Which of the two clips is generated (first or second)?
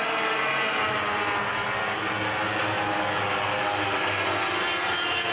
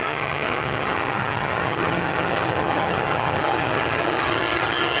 second